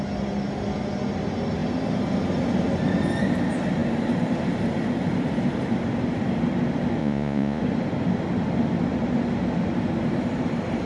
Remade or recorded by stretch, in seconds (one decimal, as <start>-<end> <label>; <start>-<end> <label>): 0.0-7.0 recorded; 7.0-7.6 remade; 7.6-10.9 recorded